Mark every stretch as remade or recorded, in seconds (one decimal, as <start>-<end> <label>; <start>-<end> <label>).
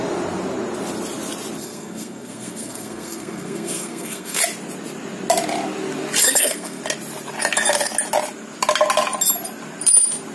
0.0-1.6 recorded; 1.6-4.4 remade; 4.4-6.2 recorded; 6.2-6.8 remade; 6.8-10.3 recorded